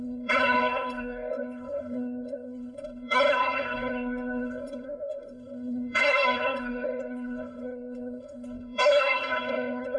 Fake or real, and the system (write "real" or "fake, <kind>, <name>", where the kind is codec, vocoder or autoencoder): fake, codec, SNAC